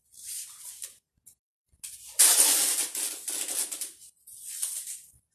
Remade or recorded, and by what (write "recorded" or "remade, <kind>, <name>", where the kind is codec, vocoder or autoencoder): recorded